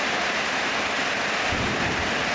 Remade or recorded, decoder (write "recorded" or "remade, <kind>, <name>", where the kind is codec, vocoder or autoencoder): recorded